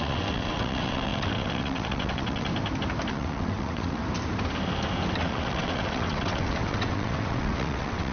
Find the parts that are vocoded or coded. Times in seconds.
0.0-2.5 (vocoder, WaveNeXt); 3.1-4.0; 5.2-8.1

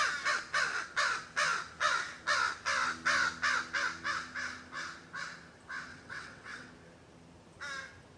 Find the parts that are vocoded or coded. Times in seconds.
5.9-6.7 (vocoder, WaveNeXt)